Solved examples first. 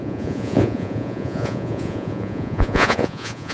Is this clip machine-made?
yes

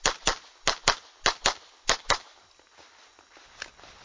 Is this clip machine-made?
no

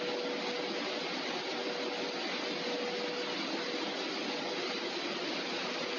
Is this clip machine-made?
no